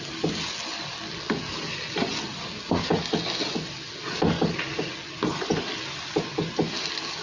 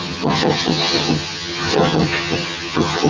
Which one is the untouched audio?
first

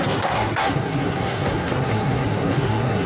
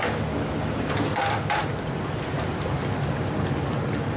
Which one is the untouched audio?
second